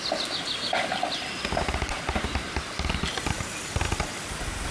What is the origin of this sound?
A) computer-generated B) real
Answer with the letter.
B